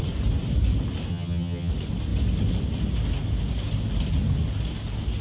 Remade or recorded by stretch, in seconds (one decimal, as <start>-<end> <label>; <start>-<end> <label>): 0.0-1.1 recorded; 1.1-1.7 remade; 1.7-5.2 recorded